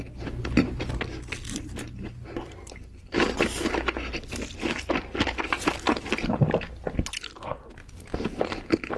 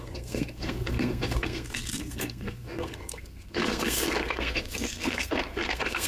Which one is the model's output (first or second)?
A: second